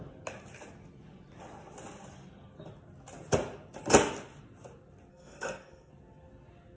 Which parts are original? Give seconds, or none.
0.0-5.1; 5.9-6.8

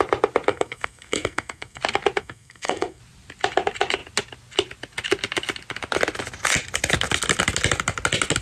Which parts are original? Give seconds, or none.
0.0-0.5; 1.8-2.2; 3.0-8.4

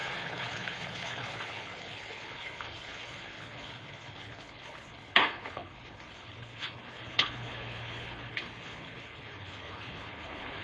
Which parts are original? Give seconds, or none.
none

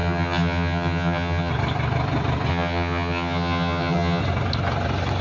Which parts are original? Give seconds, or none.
1.5-2.5; 4.2-5.2